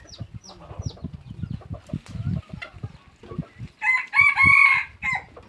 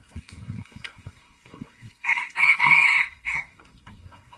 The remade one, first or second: second